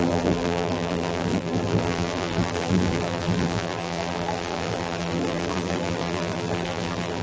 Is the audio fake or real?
fake